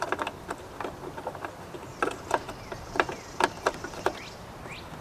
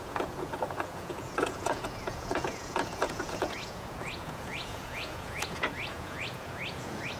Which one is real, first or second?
first